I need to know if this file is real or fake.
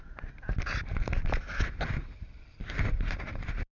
real